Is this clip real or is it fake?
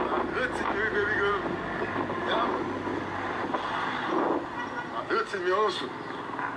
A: real